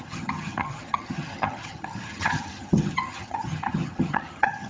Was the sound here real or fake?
fake